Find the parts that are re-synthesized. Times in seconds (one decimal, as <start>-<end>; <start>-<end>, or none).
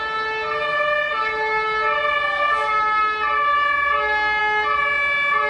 none